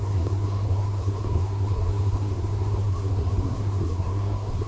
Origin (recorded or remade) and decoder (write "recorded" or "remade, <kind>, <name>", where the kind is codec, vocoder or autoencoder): remade, codec, SNAC